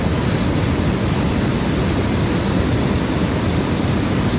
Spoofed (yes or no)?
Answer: no